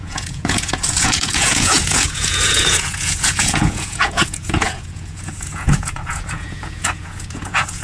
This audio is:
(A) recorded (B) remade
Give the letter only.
B